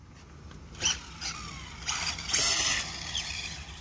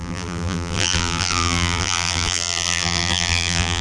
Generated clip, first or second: second